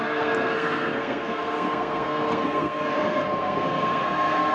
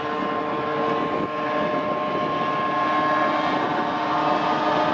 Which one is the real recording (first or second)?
second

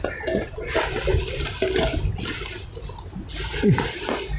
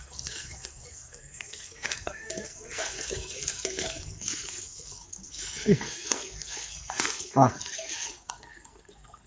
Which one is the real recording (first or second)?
first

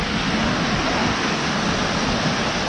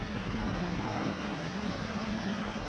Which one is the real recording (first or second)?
first